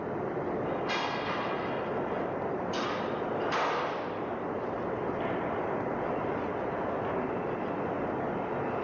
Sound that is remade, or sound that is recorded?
recorded